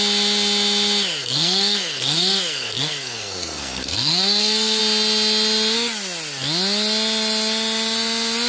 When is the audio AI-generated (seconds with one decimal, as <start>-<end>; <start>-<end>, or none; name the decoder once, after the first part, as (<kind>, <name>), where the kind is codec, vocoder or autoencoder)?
1.2-4.8 (codec, SNAC)